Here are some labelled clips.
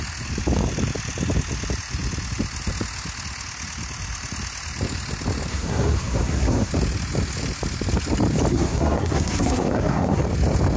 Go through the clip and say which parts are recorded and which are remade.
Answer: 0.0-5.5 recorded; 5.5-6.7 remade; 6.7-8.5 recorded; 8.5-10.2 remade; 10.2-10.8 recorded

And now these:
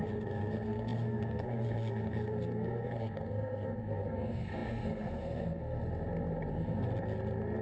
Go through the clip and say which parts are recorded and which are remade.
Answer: 0.0-5.8 remade; 5.8-6.5 recorded; 6.5-6.9 remade; 6.9-7.6 recorded

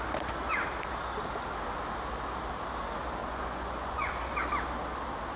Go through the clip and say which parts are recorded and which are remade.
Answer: 0.0-3.2 recorded; 3.2-4.1 remade; 4.1-5.4 recorded

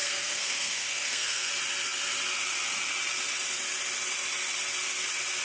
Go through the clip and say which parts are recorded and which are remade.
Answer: 0.0-1.5 remade; 1.5-5.4 recorded

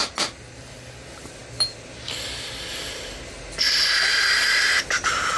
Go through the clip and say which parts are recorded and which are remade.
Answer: 0.0-5.4 recorded

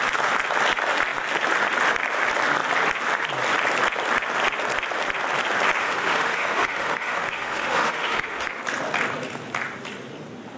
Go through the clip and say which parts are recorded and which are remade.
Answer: 0.0-5.8 recorded; 5.8-8.5 remade; 8.5-10.6 recorded

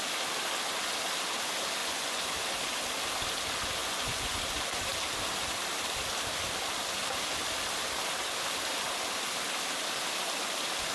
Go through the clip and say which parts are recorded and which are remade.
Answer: 0.0-1.8 recorded; 1.8-2.3 remade; 2.3-3.8 recorded; 3.8-4.4 remade; 4.4-10.9 recorded